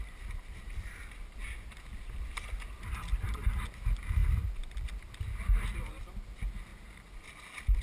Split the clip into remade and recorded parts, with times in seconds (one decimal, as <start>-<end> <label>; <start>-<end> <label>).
0.0-6.7 recorded; 6.7-7.8 remade

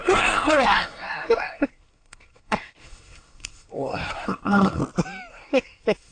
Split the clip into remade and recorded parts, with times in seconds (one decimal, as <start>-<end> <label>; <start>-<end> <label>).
0.0-4.8 remade; 4.8-5.3 recorded; 5.3-6.1 remade